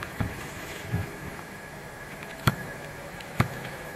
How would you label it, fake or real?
fake